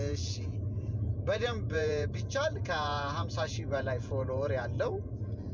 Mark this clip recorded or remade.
remade